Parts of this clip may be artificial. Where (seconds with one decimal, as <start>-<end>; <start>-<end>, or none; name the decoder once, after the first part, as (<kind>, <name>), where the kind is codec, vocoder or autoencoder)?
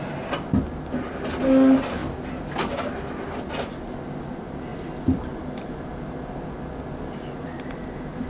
none